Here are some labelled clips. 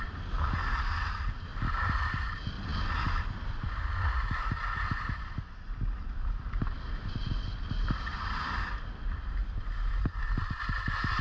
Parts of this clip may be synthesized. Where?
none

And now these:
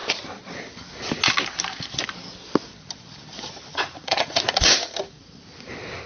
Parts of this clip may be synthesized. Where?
3.7-4.7 (vocoder, Vocos)

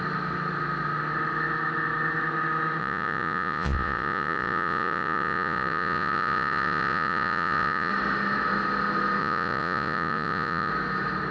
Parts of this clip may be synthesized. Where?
2.8-7.9 (vocoder, Vocos); 9.2-10.7

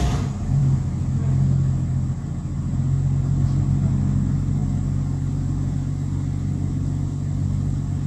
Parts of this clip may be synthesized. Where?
none

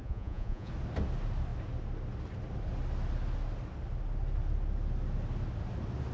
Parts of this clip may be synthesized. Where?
0.0-0.7 (vocoder, Vocos)

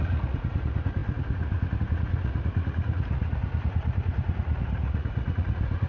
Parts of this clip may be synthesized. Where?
0.0-5.9 (vocoder, Vocos)

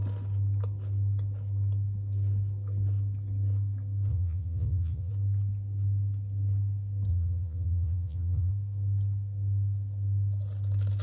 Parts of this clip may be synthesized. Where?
4.1-5.1 (vocoder, Vocos); 7.1-8.5

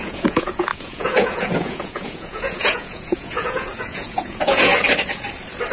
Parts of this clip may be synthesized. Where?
0.0-4.7 (vocoder, Vocos)